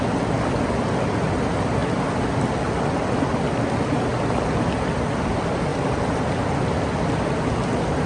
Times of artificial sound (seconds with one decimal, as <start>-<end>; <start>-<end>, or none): none